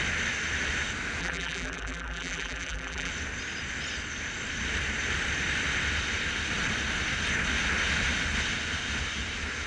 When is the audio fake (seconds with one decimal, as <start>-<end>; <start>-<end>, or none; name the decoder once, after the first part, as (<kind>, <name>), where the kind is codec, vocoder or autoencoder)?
1.2-3.1 (vocoder, BigVGAN v2)